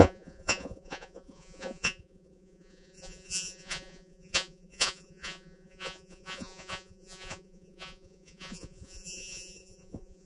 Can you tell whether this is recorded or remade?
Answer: remade